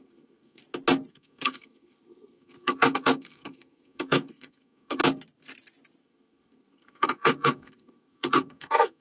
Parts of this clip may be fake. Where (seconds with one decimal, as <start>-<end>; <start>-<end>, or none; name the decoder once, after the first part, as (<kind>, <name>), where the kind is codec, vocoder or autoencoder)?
0.0-0.6 (codec, SNAC); 1.1-5.0; 6.0-9.0